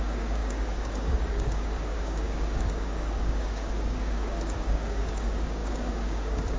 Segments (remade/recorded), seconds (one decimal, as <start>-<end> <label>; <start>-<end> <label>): 0.0-6.6 remade